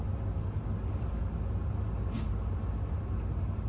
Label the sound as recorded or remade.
recorded